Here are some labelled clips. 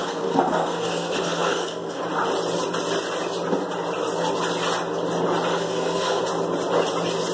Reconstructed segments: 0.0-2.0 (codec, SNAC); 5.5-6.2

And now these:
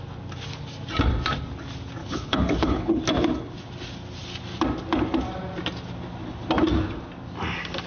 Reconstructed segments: 2.0-3.0 (codec, HILCodec)

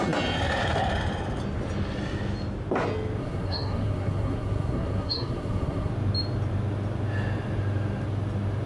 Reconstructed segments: 3.2-5.9 (codec, SNAC)

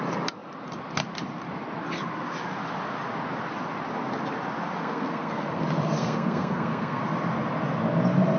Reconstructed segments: 4.8-5.6 (codec, SNAC); 6.0-7.0

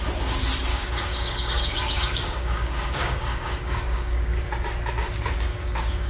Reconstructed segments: 0.7-4.4 (codec, DAC); 5.5-6.1

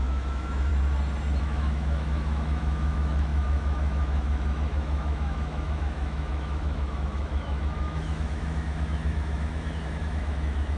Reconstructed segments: 0.0-0.7 (autoencoder, DAC-VAE); 1.4-10.8